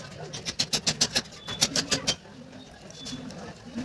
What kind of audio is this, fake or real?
real